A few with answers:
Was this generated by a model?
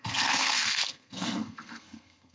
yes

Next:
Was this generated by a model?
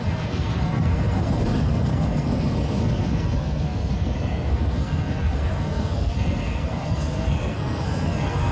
yes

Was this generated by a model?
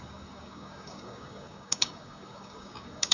yes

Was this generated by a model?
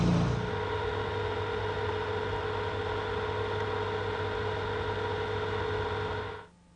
no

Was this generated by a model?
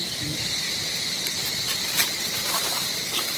yes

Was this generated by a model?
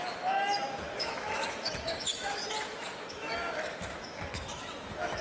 yes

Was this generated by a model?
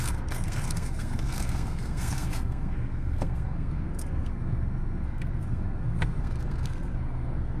yes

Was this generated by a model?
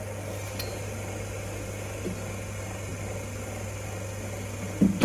no